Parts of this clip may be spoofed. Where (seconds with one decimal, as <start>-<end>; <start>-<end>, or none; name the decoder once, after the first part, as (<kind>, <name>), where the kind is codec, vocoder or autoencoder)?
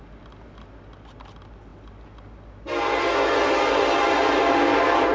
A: none